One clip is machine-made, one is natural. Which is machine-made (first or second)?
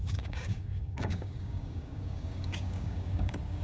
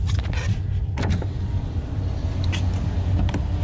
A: first